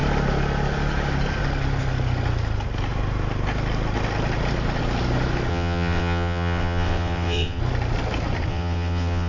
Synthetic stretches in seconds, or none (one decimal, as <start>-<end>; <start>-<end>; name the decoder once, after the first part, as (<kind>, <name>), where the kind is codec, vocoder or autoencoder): 5.5-7.6 (vocoder, WaveNeXt); 8.5-9.3